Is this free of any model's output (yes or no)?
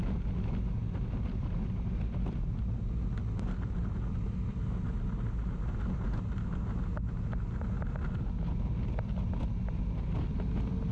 yes